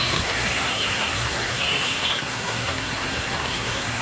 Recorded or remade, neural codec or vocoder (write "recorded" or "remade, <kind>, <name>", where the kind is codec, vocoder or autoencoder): remade, codec, SNAC